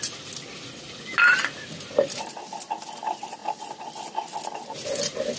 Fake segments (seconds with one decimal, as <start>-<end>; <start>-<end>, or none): 1.4-1.9